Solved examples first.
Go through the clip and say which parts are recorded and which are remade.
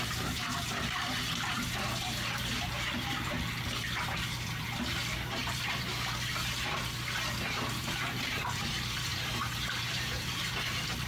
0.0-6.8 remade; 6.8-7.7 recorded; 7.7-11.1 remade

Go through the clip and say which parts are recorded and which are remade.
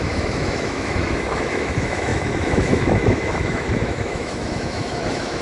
0.0-5.4 remade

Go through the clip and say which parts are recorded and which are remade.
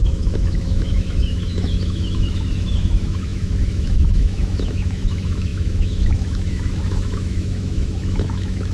0.0-8.7 remade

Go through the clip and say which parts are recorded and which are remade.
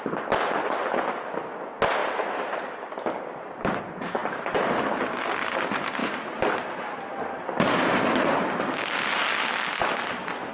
0.0-2.0 recorded; 2.0-3.8 remade; 3.8-10.5 recorded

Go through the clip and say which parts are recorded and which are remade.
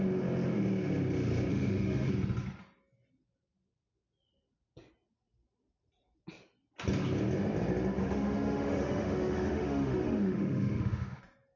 0.0-1.5 recorded; 1.5-2.1 remade; 2.1-8.0 recorded; 8.0-11.2 remade; 11.2-11.6 recorded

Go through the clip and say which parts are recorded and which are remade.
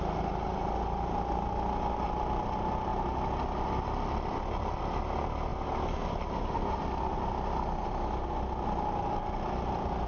0.0-10.1 recorded